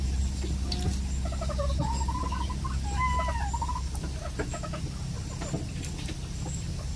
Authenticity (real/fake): real